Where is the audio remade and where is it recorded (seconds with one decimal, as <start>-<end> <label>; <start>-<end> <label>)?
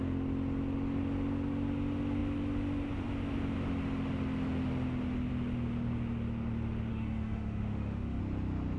0.0-6.9 recorded; 6.9-8.2 remade; 8.2-8.8 recorded